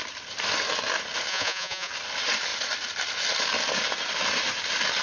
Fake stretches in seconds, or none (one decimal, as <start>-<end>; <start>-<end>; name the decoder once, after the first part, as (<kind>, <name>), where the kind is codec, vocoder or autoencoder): 1.3-1.9 (vocoder, Vocos)